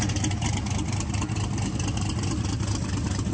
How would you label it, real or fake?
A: real